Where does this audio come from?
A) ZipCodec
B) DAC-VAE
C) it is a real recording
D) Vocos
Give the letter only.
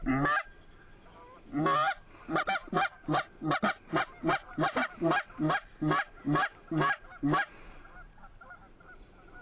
C